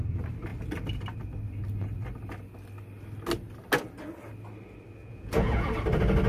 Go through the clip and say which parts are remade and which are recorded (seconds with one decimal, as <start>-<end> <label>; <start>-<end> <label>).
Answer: 0.0-5.0 recorded; 5.0-5.7 remade; 5.7-6.3 recorded